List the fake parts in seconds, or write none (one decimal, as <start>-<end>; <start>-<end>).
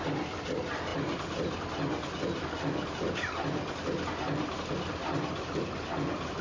none